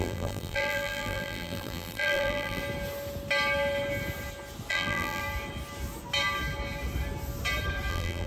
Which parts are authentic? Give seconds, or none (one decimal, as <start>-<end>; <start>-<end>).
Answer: 2.6-4.7; 5.2-7.9